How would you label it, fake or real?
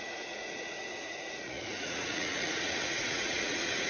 fake